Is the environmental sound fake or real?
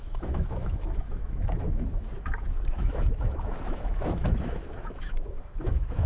fake